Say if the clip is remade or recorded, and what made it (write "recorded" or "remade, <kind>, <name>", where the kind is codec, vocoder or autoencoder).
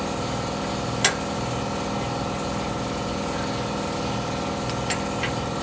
recorded